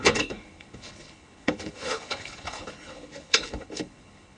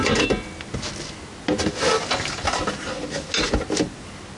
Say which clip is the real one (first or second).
second